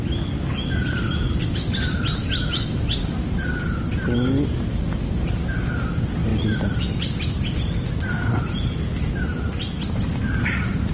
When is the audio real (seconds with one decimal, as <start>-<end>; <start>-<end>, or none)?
0.0-10.9